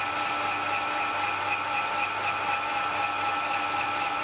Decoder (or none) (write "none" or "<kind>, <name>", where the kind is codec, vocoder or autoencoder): none